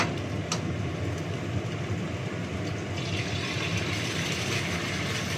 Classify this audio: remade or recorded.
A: recorded